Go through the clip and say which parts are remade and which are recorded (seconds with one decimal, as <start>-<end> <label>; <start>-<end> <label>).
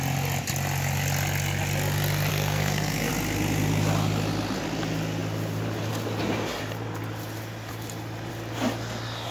0.0-2.3 recorded; 2.3-3.1 remade; 3.1-9.3 recorded